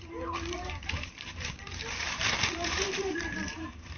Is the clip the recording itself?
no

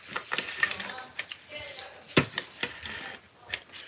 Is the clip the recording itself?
yes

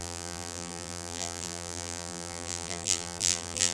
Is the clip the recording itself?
no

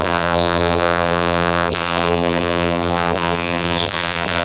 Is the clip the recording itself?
no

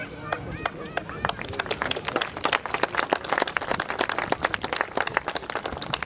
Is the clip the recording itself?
yes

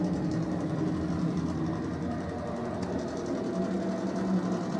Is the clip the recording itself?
yes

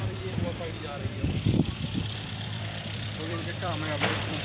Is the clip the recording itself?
no